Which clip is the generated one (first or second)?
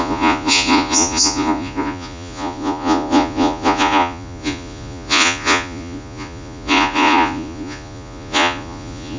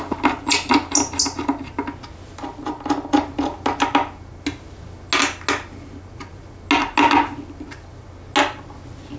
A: first